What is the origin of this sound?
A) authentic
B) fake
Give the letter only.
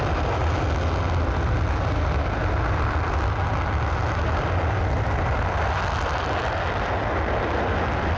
A